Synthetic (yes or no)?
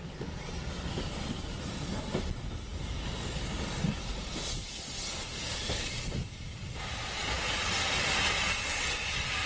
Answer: no